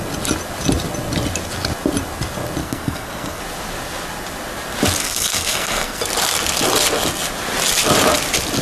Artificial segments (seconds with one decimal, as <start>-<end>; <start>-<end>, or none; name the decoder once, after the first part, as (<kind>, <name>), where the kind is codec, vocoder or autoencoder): 2.6-3.4 (codec, SNAC); 5.0-6.0